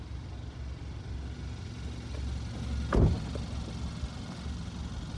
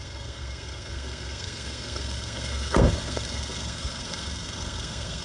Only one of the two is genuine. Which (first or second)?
first